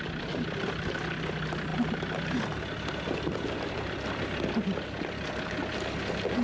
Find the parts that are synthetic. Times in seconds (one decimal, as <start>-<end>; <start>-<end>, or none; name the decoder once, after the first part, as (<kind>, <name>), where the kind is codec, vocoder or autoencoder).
none